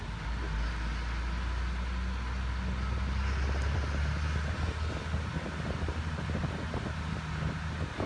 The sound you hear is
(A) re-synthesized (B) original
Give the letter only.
B